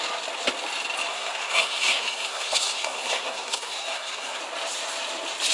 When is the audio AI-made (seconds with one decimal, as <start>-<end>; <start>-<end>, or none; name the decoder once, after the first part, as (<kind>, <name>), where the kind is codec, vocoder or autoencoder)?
1.1-4.4 (codec, SNAC)